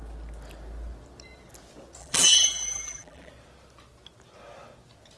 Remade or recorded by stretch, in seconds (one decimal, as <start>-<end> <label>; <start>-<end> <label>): 0.0-2.0 recorded; 2.0-3.3 remade; 3.3-5.2 recorded